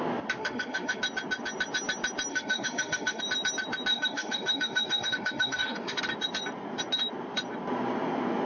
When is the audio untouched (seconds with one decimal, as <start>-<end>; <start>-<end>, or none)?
0.0-0.4; 1.0-2.3; 3.2-3.9; 6.0-8.5